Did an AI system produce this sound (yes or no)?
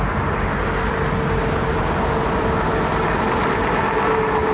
no